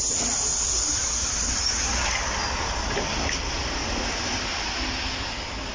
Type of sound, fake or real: real